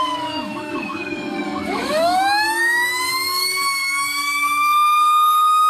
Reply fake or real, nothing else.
fake